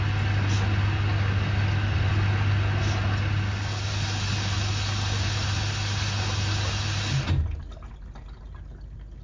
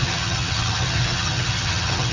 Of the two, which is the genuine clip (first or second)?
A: first